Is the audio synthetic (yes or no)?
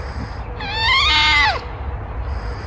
no